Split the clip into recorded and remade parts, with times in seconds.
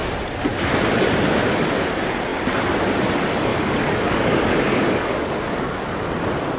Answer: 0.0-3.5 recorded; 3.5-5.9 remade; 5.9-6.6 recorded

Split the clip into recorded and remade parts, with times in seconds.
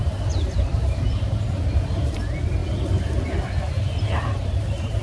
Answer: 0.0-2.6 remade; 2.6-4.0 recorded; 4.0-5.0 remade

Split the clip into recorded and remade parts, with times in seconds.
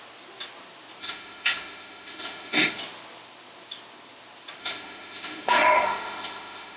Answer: 0.0-1.0 recorded; 1.0-2.8 remade; 2.8-4.6 recorded; 4.6-6.8 remade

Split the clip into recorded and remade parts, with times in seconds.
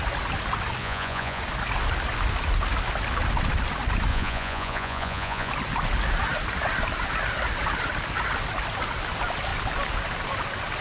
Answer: 0.0-0.8 recorded; 0.8-1.4 remade; 1.4-4.1 recorded; 4.1-5.5 remade; 5.5-10.8 recorded